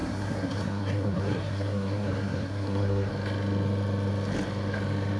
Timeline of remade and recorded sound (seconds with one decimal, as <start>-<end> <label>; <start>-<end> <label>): 0.0-3.1 remade; 3.1-5.2 recorded